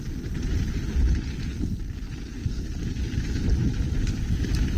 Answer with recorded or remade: recorded